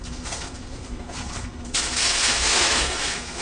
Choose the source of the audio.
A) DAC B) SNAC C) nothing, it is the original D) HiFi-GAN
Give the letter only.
B